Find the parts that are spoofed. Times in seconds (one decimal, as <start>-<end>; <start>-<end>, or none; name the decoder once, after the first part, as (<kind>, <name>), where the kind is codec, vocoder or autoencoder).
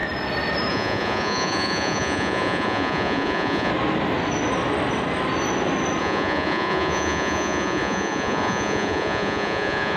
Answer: 0.7-3.7 (vocoder, Vocos); 6.0-10.0